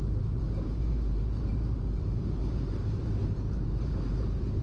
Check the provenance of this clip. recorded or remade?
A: remade